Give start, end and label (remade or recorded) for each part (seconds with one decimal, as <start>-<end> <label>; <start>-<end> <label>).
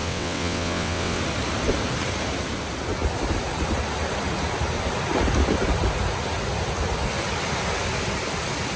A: 0.0-1.2 remade; 1.2-8.8 recorded